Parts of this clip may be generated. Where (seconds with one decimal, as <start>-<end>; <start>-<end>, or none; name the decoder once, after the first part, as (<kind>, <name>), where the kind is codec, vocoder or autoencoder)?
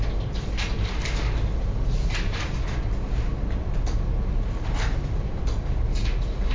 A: none